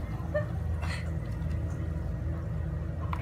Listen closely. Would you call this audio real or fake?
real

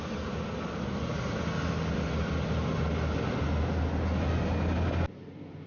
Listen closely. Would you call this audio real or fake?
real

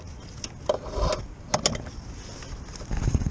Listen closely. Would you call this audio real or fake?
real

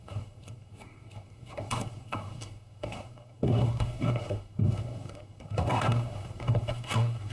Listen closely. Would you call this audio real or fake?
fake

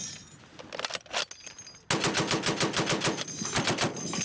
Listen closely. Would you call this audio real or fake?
real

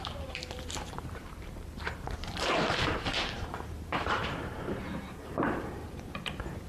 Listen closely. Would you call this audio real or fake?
fake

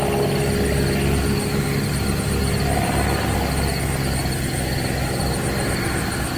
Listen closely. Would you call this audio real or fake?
real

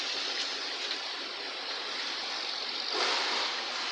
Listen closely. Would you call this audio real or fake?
real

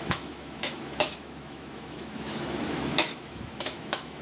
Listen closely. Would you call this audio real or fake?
fake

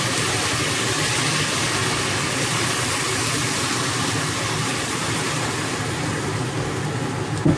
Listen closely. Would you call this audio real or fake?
real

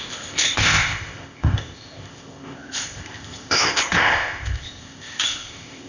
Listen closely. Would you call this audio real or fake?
fake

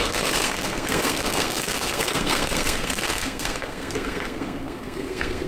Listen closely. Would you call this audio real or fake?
fake